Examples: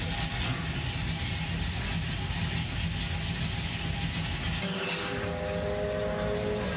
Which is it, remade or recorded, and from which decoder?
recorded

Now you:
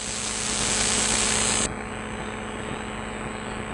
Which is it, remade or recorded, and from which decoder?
recorded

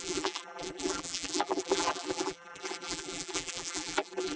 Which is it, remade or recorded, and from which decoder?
remade, vocoder, BigVGAN v2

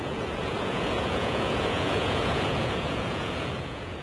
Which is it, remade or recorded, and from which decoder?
remade, vocoder, Vocos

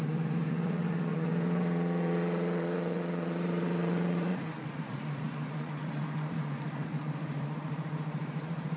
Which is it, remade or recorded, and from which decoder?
remade, vocoder, Vocos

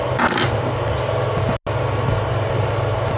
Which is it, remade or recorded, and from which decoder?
recorded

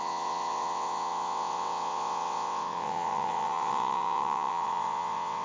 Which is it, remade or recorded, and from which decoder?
remade, vocoder, WaveNeXt